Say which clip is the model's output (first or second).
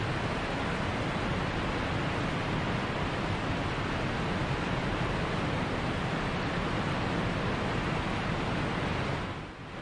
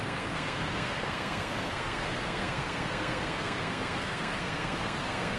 second